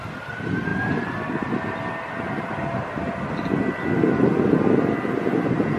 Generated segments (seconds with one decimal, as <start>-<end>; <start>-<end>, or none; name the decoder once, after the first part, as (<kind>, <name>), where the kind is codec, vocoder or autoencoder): none